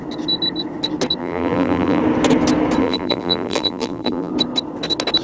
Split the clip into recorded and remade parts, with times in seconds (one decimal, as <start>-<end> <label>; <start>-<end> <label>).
0.0-1.2 recorded; 1.2-2.0 remade; 2.0-2.8 recorded; 2.8-4.3 remade; 4.3-5.2 recorded